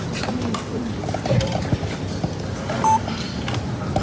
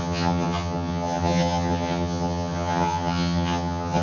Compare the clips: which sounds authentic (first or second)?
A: first